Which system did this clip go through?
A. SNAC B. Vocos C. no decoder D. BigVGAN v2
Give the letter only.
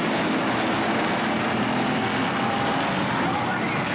C